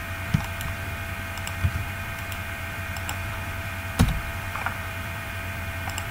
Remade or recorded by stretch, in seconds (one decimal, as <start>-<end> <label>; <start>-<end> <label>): 0.0-6.1 remade

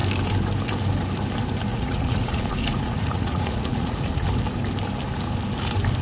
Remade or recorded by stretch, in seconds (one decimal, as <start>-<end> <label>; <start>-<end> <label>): 0.0-1.7 recorded; 1.7-4.3 remade; 4.3-6.0 recorded